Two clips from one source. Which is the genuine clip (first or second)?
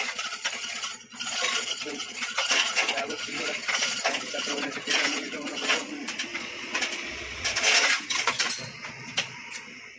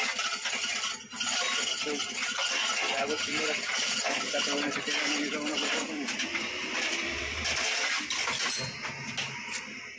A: second